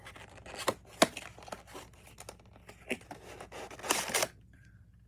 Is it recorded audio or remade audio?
recorded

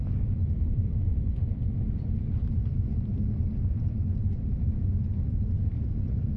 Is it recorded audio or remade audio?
remade